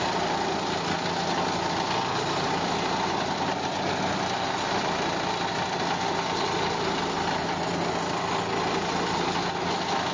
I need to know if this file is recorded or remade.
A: recorded